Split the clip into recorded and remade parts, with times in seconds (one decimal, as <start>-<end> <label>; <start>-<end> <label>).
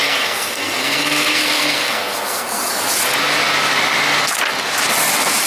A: 0.0-2.7 remade; 2.7-5.5 recorded